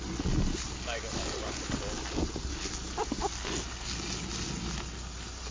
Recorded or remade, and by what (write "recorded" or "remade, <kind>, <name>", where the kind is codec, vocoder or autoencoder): recorded